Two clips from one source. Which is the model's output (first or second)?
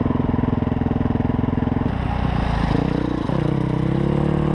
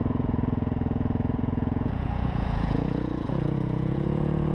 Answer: second